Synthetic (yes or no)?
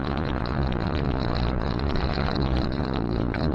yes